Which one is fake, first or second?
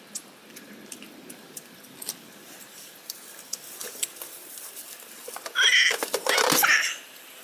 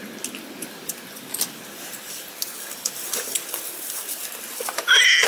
first